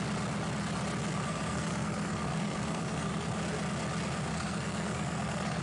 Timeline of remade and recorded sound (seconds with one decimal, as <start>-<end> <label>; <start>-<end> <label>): 0.0-1.1 recorded; 1.1-3.3 remade; 3.3-4.3 recorded; 4.3-5.6 remade